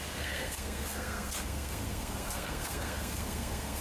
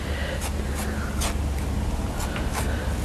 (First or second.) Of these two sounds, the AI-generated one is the first